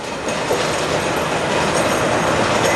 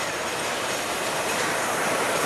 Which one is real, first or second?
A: first